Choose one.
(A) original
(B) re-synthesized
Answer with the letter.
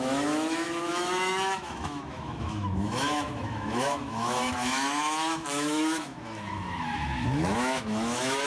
B